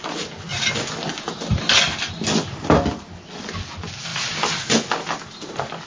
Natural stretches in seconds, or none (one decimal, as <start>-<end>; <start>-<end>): 0.0-5.9